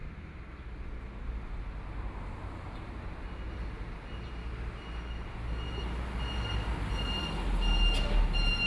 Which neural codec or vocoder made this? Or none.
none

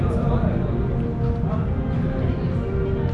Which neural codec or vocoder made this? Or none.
none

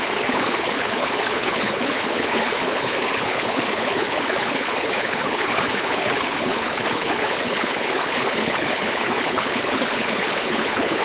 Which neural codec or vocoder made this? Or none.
codec, HILCodec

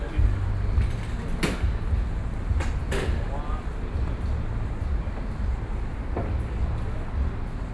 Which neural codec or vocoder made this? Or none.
none